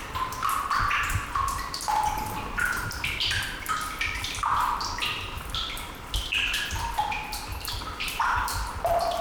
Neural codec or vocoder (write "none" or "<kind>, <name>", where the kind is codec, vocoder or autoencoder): vocoder, BigVGAN v2